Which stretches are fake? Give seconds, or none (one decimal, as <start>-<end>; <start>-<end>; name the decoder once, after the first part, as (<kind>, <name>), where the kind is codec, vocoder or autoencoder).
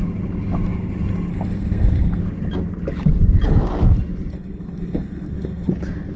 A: 1.3-2.2 (codec, SNAC); 4.3-5.7